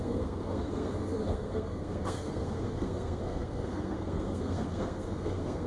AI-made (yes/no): yes